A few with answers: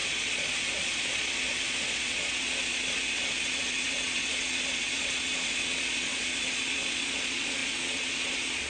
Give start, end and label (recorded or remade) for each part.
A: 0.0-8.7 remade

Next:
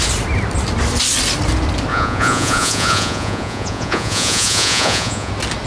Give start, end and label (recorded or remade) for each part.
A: 0.0-1.9 recorded; 1.9-5.3 remade; 5.3-5.7 recorded

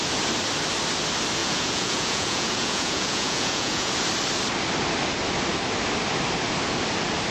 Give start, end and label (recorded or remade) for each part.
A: 0.0-1.4 recorded; 1.4-3.9 remade; 3.9-7.3 recorded